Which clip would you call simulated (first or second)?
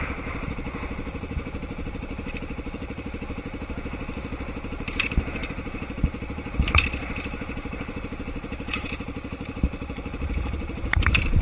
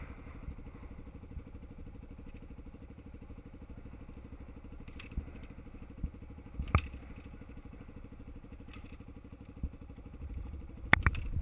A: first